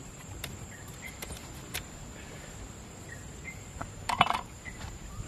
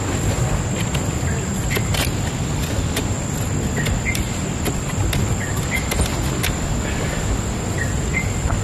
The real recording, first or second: second